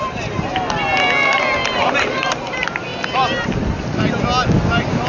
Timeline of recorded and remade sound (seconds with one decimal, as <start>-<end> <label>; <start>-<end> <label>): 0.0-5.1 recorded